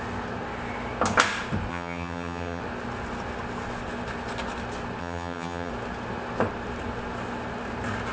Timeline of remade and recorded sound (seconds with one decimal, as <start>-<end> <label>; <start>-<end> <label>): 0.0-1.7 recorded; 1.7-2.6 remade; 2.6-5.0 recorded; 5.0-5.7 remade; 5.7-8.1 recorded